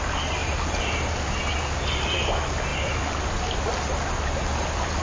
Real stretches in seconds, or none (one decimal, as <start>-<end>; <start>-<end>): 0.0-5.0